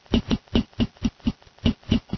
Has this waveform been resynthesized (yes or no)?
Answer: no